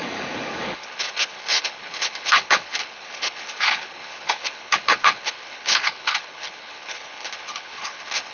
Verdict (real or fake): fake